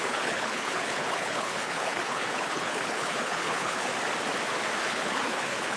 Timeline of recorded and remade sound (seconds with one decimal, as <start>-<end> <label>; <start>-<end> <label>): 0.0-3.9 remade; 3.9-4.8 recorded; 4.8-5.8 remade